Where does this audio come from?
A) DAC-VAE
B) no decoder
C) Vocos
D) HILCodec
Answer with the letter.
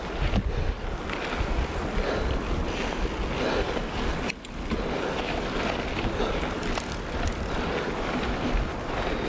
B